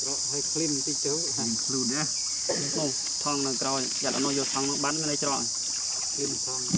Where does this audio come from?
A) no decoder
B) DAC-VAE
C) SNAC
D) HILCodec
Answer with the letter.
A